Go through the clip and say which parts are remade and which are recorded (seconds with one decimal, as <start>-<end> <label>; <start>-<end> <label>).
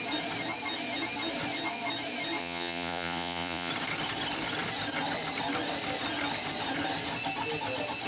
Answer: 0.0-2.4 recorded; 2.4-3.7 remade; 3.7-8.1 recorded